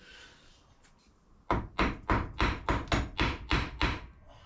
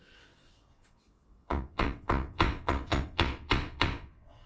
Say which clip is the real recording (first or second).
first